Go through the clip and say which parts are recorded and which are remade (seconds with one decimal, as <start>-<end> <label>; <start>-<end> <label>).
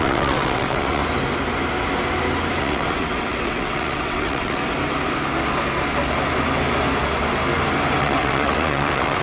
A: 0.0-1.0 remade; 1.0-2.6 recorded; 2.6-4.6 remade; 4.6-8.0 recorded; 8.0-9.2 remade